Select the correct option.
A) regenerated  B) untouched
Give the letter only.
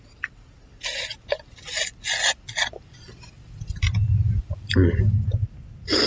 A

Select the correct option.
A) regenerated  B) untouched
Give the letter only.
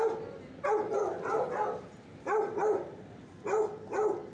B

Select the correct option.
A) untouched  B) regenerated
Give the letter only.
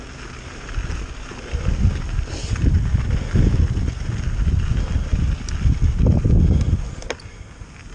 A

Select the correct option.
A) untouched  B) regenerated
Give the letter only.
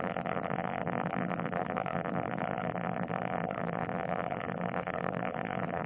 B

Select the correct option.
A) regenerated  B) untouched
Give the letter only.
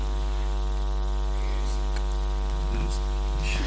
B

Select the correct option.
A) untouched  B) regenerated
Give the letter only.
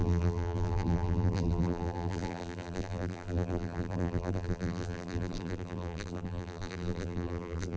B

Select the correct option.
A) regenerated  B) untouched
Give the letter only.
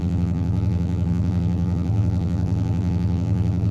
A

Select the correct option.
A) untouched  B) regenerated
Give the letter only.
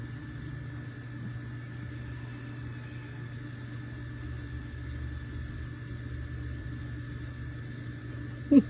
A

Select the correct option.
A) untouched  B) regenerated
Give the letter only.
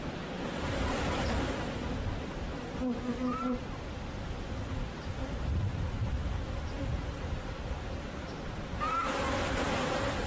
B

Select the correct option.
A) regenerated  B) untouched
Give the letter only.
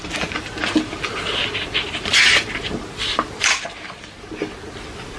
B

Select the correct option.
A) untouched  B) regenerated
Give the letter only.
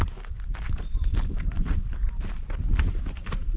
A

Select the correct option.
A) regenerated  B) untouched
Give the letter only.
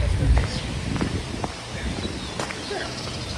B